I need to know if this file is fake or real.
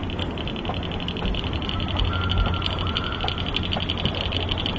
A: real